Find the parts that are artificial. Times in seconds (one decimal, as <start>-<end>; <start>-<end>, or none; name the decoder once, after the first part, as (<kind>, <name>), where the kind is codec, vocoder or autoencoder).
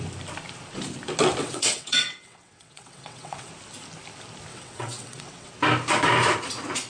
1.4-3.5 (vocoder, WaveNeXt); 4.5-5.5